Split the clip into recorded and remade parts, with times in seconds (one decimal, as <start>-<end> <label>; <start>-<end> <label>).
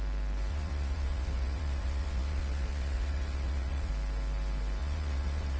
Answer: 0.0-0.5 recorded; 0.5-3.9 remade; 3.9-4.8 recorded; 4.8-5.6 remade